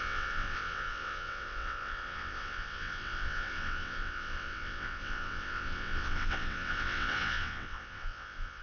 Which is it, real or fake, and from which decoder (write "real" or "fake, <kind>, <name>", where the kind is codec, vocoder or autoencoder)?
fake, vocoder, WaveNeXt